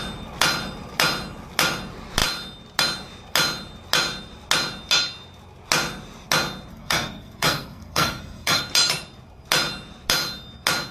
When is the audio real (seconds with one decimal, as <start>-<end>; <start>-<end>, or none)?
0.0-6.7; 8.6-10.9

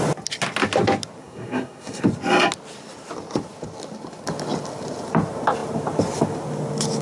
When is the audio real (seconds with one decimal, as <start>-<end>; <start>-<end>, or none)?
0.0-1.2; 2.0-7.0